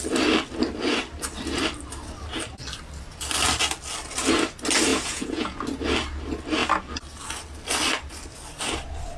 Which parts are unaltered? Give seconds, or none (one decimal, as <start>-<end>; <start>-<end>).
0.0-4.9; 5.6-9.2